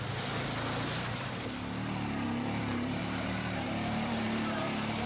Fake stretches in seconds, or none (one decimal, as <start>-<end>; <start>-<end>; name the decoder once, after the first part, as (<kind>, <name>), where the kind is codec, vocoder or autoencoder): 2.6-5.1 (vocoder, BigVGAN v2)